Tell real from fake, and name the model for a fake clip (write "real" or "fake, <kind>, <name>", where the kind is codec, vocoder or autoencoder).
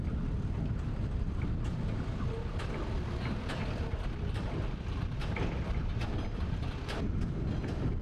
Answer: real